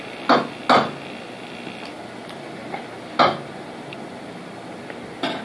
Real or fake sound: real